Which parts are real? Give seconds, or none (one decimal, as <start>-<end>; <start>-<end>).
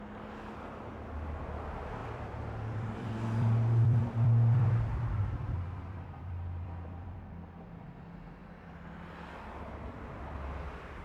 0.0-2.0; 7.2-11.0